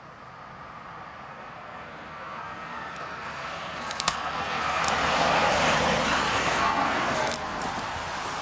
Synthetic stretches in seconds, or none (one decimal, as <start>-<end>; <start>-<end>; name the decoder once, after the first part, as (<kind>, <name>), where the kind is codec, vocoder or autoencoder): 1.3-4.8 (codec, SNAC); 6.3-7.6